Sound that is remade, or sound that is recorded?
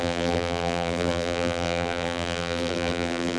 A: remade